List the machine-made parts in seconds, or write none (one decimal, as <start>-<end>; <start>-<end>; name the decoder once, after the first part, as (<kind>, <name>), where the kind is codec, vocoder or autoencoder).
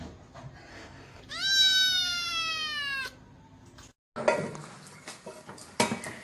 0.7-1.2 (codec, DAC)